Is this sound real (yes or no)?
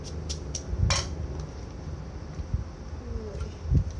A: yes